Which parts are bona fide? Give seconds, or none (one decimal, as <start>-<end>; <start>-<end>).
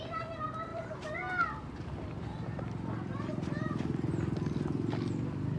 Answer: 0.0-0.7; 4.1-5.6